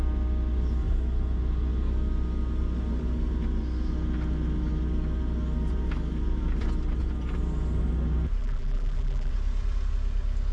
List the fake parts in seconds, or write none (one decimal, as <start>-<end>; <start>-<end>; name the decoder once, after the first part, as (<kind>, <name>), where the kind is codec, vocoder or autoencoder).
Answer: 8.4-9.3 (vocoder, BigVGAN v2)